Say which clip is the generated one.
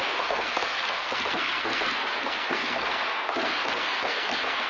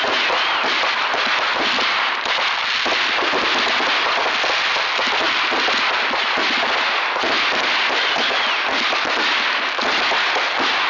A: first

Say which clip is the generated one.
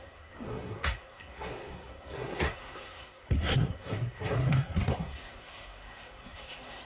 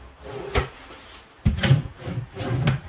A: first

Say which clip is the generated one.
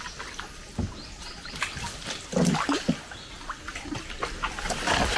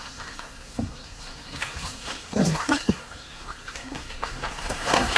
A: second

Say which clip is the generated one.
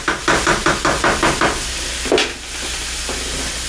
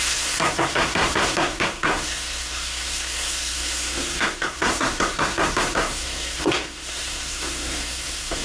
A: second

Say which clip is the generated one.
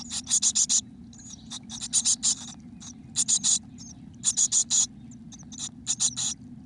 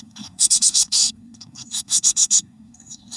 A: second